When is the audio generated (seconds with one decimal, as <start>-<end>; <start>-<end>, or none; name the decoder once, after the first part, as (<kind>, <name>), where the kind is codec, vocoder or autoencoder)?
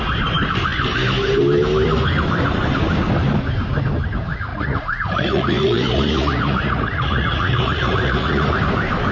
4.5-8.6 (vocoder, Vocos)